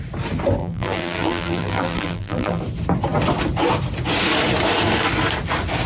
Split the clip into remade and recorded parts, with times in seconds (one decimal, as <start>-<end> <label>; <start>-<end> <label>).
0.0-0.6 recorded; 0.6-2.6 remade; 2.6-5.9 recorded